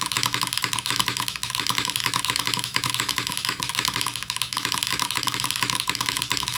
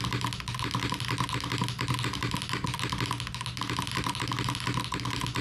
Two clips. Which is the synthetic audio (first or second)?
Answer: first